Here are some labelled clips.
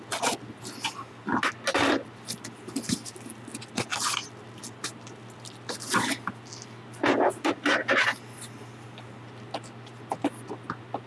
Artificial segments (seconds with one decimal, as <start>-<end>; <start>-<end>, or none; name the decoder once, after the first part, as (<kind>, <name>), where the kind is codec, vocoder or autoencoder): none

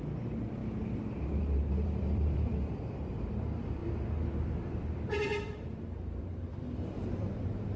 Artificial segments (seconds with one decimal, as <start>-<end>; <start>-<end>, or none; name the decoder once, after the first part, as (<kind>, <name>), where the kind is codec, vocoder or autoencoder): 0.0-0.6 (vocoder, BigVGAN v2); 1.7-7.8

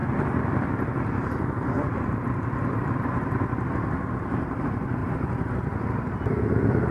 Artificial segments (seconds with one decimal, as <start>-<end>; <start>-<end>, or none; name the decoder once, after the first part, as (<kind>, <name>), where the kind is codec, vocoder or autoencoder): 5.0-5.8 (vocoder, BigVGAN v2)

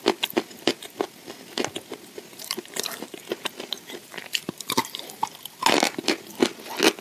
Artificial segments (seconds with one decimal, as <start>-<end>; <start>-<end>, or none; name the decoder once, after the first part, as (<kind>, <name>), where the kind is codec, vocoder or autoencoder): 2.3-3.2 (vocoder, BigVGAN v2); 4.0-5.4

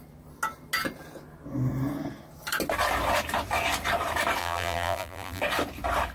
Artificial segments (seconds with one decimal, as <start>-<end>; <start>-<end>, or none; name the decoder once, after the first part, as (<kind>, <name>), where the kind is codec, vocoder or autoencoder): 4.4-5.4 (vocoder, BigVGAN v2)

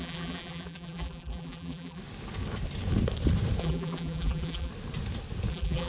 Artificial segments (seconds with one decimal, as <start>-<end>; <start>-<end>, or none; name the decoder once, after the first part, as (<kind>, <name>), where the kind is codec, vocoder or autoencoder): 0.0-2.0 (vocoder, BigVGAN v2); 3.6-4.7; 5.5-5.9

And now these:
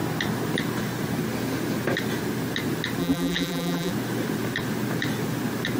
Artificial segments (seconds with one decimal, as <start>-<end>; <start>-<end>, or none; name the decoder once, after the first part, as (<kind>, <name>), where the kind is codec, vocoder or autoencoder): 3.0-3.9 (vocoder, BigVGAN v2)